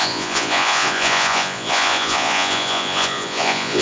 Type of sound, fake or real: fake